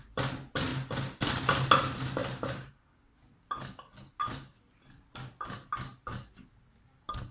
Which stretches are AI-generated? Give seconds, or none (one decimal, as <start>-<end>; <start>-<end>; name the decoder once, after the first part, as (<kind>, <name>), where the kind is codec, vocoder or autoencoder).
none